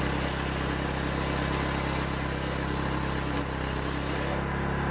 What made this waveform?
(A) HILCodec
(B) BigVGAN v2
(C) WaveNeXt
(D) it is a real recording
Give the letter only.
D